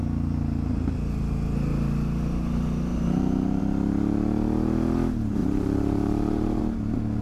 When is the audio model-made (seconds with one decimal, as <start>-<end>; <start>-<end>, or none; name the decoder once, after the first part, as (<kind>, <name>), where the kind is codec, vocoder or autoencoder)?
2.9-3.6 (vocoder, BigVGAN v2); 5.4-6.6